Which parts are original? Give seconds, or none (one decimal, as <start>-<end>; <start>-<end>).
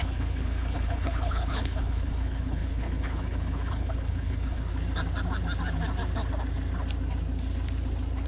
4.7-8.3